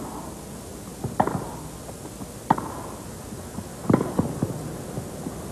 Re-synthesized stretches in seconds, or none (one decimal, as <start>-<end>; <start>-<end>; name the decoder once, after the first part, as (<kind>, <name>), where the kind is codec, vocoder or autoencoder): none